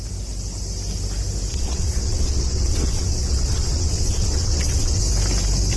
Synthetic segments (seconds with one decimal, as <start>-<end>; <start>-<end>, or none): 1.5-5.0